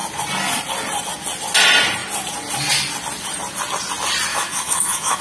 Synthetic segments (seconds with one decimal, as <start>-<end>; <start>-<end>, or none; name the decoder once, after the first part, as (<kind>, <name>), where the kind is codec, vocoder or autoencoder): 4.3-5.2 (autoencoder, DAC-VAE)